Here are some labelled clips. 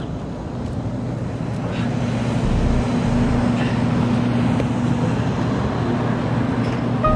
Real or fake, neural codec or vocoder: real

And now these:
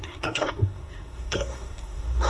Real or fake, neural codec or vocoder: fake, codec, SNAC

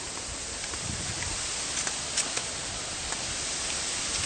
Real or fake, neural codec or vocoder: real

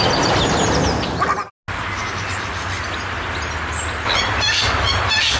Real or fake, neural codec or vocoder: real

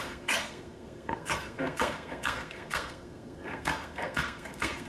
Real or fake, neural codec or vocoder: fake, codec, SNAC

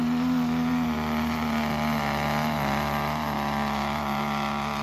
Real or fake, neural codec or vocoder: real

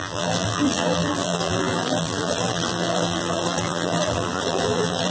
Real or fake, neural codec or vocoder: fake, vocoder, BigVGAN v2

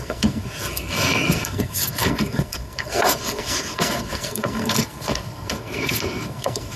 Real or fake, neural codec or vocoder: fake, codec, SNAC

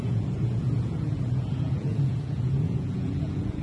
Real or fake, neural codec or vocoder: fake, vocoder, Vocos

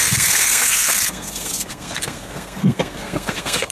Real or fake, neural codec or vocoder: fake, codec, SNAC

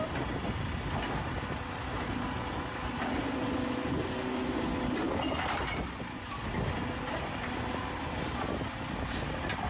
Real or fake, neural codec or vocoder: real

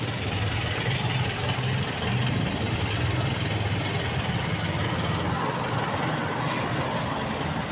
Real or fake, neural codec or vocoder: real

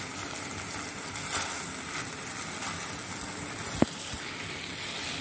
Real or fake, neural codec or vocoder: real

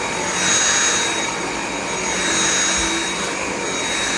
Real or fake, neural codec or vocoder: real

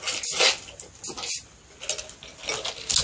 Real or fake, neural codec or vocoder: real